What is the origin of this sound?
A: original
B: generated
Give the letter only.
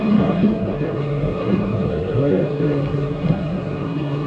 B